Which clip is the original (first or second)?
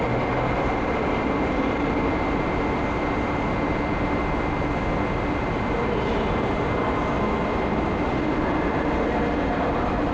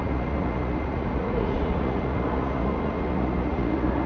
first